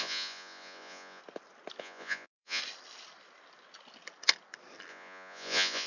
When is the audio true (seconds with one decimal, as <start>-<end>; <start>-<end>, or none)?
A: 1.2-1.8; 2.6-4.9